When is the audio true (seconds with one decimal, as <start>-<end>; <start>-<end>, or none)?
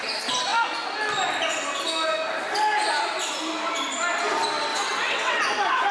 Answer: 0.0-4.7; 5.4-5.9